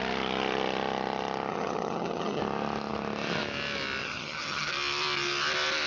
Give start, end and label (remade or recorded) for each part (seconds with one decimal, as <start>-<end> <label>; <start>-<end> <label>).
0.0-1.5 recorded; 1.5-2.4 remade; 2.4-4.0 recorded; 4.0-4.7 remade; 4.7-5.9 recorded